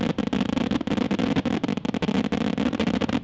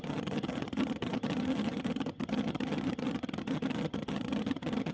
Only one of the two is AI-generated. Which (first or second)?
second